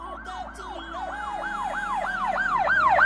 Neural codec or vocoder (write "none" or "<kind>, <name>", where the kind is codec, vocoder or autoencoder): none